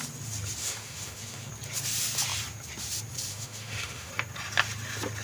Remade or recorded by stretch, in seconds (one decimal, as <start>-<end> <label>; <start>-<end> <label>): 0.0-0.6 recorded; 0.6-1.5 remade; 1.5-3.3 recorded; 3.3-4.1 remade; 4.1-5.2 recorded